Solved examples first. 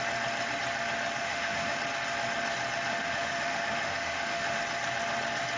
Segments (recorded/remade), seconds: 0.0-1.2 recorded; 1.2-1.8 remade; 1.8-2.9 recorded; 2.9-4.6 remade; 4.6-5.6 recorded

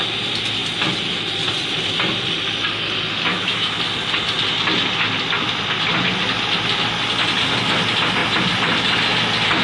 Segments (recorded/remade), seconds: 0.0-3.3 recorded; 3.3-3.8 remade; 3.8-9.6 recorded

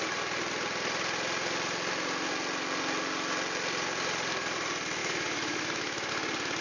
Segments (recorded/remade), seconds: 0.0-5.0 recorded; 5.0-6.1 remade; 6.1-6.6 recorded

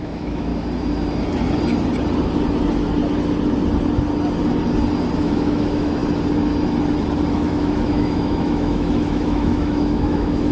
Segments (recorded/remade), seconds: 0.0-0.5 remade; 0.5-5.2 recorded; 5.2-6.0 remade; 6.0-7.3 recorded; 7.3-10.5 remade

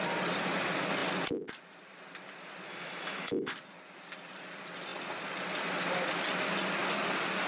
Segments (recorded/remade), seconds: 0.0-2.7 recorded; 2.7-3.5 remade; 3.5-7.5 recorded

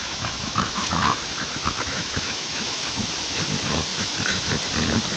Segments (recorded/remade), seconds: 0.0-3.0 remade; 3.0-3.9 recorded; 3.9-4.5 remade; 4.5-5.2 recorded

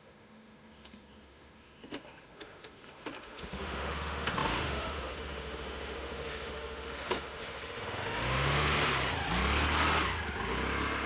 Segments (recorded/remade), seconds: 0.0-8.8 remade; 8.8-11.1 recorded

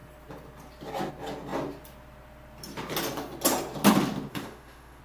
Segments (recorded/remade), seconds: 0.0-4.3 recorded; 4.3-5.0 remade